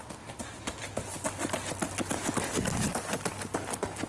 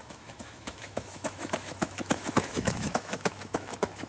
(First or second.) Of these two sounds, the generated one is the second